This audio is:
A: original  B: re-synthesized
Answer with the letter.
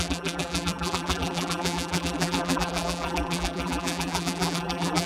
B